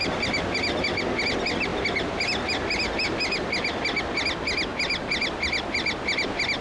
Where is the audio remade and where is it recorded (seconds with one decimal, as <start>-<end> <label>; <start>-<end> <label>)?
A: 0.0-6.6 recorded